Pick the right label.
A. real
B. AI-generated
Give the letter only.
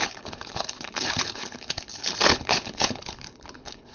B